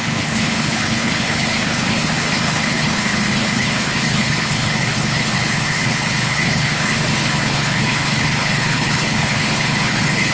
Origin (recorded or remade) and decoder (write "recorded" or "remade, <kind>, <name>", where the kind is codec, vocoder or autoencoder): remade, codec, HILCodec